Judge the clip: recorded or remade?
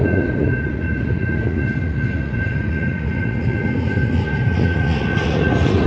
remade